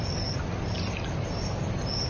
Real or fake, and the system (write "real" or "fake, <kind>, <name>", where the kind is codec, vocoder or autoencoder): real